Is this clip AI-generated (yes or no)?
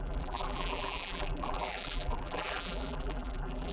yes